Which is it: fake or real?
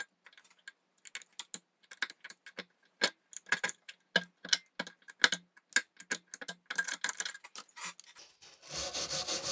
real